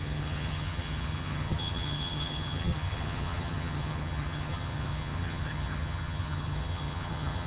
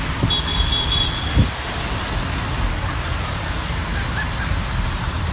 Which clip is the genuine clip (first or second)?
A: second